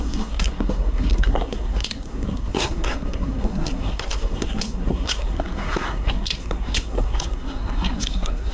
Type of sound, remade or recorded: remade